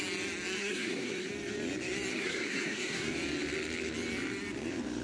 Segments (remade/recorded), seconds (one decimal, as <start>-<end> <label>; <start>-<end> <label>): 0.0-0.6 recorded; 0.6-1.3 remade; 1.3-2.1 recorded; 2.1-3.1 remade; 3.1-5.0 recorded